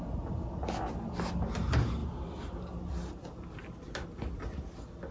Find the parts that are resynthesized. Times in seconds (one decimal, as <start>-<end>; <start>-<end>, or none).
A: none